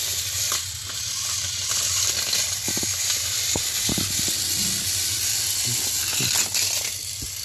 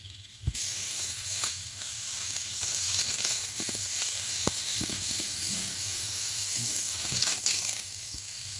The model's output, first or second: second